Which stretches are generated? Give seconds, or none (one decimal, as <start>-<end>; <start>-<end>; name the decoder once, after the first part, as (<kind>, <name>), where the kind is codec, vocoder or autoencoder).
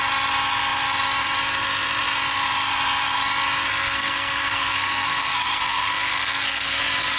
3.7-6.8 (codec, SNAC)